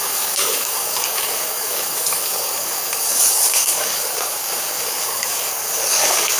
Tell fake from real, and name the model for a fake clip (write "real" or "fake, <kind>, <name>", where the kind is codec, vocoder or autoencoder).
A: fake, codec, DAC